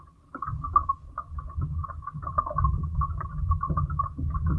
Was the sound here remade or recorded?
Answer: recorded